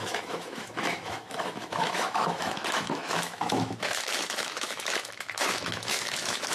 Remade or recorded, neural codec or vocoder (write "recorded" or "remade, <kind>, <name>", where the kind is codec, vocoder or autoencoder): remade, autoencoder, DAC-VAE